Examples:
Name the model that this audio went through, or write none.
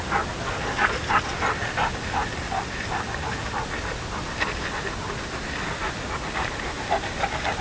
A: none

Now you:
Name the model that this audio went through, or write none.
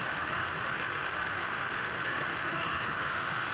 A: autoencoder, DAC-VAE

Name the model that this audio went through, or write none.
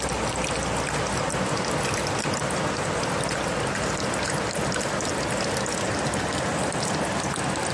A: none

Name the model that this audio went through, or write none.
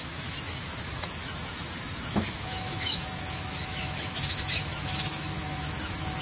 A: autoencoder, DAC-VAE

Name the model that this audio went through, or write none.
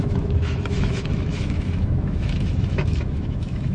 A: autoencoder, DAC-VAE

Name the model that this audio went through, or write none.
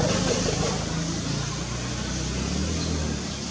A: none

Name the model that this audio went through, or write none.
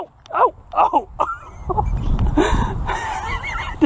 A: none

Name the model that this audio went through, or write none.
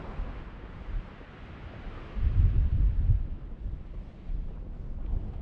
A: none